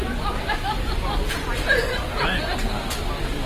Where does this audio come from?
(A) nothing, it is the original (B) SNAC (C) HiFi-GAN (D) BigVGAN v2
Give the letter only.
A